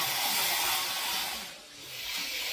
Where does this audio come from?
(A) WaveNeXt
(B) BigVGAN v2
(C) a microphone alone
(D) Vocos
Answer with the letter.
B